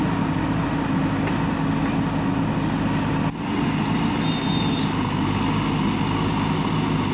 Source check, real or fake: real